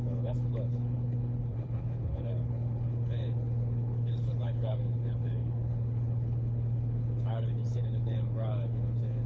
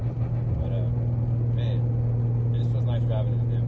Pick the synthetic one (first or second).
first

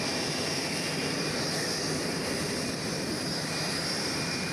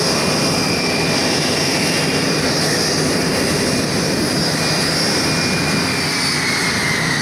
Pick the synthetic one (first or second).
first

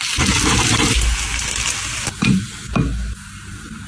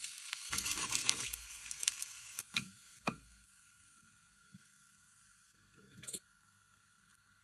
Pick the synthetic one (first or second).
second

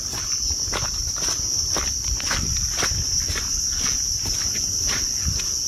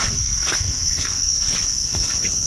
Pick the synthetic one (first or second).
second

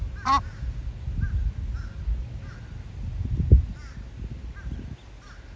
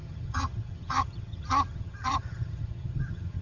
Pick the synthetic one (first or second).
second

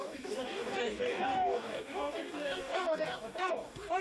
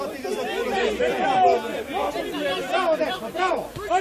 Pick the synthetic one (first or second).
first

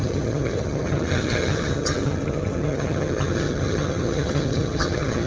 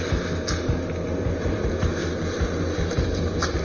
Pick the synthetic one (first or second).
first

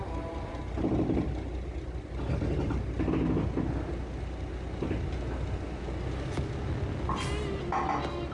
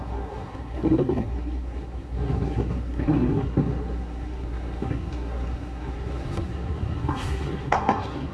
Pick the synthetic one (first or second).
second